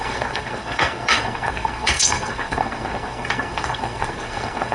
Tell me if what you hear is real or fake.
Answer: fake